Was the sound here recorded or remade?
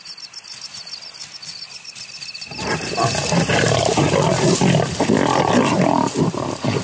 recorded